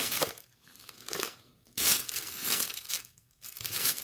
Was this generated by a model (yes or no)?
yes